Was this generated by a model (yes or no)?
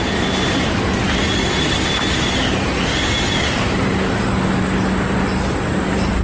no